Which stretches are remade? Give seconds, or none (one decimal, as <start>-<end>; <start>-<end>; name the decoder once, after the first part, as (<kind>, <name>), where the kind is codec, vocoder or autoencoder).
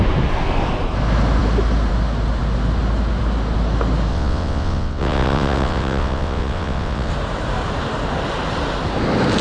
4.1-7.1 (vocoder, WaveNeXt)